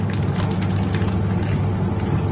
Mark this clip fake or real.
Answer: real